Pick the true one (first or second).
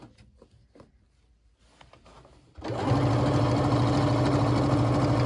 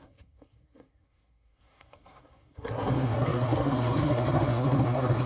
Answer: first